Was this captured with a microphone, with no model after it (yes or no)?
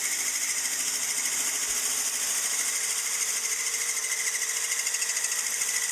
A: yes